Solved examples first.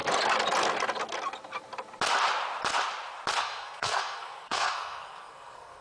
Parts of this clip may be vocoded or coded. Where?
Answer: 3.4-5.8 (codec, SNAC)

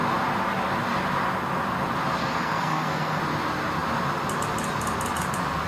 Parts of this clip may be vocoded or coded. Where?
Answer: 2.2-3.2 (codec, SNAC)

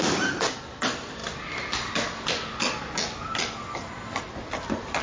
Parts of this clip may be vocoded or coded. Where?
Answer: none

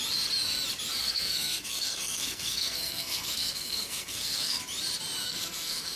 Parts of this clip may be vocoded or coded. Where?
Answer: 1.0-4.6 (codec, SNAC); 5.2-6.0

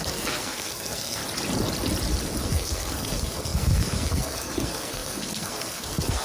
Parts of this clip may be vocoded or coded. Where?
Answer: 0.0-1.2 (codec, SNAC); 2.4-6.2